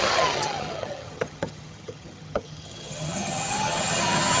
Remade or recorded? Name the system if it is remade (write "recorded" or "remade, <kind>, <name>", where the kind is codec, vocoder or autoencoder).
remade, vocoder, HiFi-GAN